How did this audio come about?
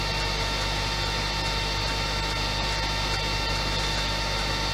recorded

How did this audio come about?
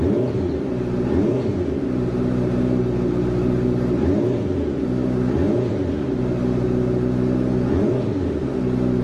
recorded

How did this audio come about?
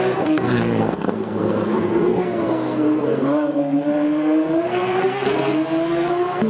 remade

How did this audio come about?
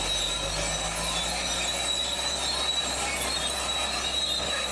recorded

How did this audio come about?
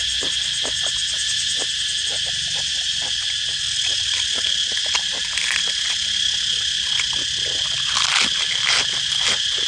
recorded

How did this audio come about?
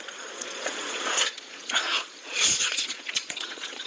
remade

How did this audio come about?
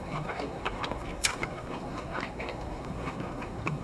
remade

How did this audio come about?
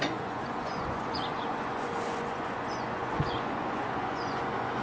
remade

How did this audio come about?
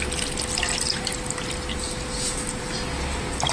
recorded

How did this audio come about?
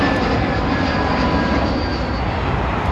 recorded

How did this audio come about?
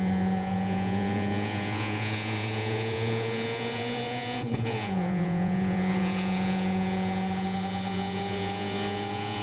remade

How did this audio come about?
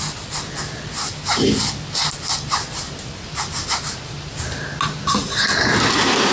recorded